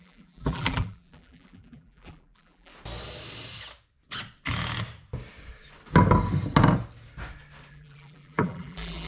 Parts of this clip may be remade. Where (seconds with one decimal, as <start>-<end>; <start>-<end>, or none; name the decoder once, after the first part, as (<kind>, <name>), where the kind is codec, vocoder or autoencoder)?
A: 0.0-2.7 (vocoder, BigVGAN v2); 7.7-9.1